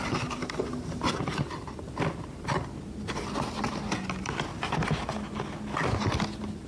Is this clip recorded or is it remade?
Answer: recorded